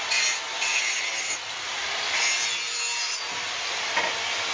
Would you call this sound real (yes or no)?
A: yes